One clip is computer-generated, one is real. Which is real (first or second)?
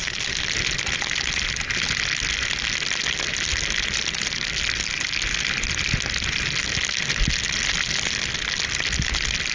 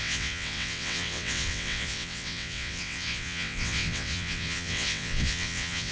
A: first